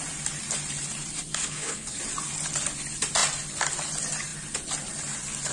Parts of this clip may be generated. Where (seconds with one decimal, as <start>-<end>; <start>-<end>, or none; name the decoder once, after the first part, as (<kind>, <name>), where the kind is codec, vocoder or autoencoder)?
1.4-2.0 (codec, HILCodec)